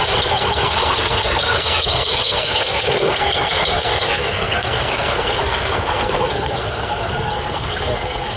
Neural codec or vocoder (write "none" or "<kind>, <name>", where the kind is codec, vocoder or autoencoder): codec, SNAC